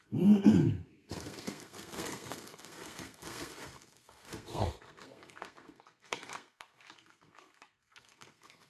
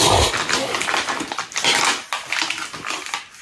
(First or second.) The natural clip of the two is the second